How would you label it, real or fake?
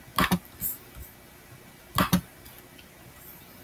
real